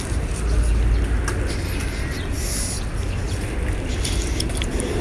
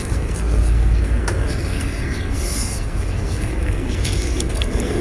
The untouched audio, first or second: first